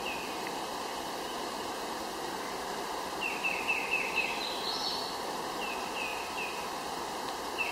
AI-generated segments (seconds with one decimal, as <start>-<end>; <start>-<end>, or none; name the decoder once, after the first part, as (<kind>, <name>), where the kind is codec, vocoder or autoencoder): 1.3-1.9 (vocoder, BigVGAN v2); 6.1-6.9